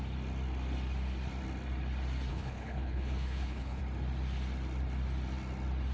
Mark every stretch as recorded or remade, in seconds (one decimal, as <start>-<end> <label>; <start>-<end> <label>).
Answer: 0.0-2.3 recorded; 2.3-3.8 remade; 3.8-5.9 recorded